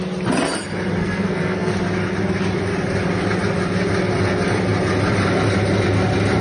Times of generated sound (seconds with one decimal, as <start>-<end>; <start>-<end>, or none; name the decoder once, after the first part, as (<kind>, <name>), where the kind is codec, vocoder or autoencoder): 1.0-1.7 (codec, SNAC)